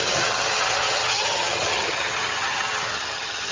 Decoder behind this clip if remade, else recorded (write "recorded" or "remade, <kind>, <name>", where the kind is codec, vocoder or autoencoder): remade, vocoder, HiFi-GAN